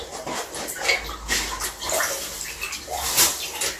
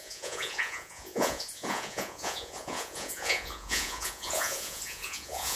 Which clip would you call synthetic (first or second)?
second